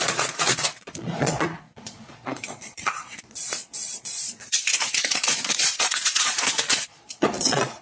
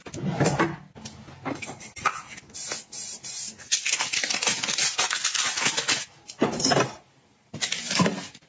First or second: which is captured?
second